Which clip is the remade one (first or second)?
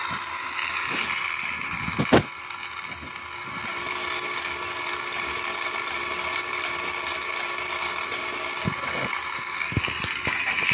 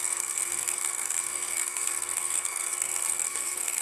second